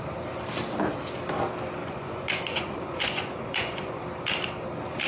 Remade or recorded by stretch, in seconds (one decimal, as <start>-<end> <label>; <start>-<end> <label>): 0.0-1.8 recorded; 1.8-4.0 remade; 4.0-5.1 recorded